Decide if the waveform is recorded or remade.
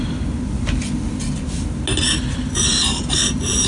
recorded